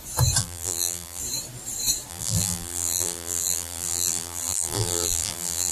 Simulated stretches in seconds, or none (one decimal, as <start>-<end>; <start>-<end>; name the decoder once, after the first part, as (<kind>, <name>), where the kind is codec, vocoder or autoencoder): 0.4-1.2 (vocoder, BigVGAN v2); 2.1-5.7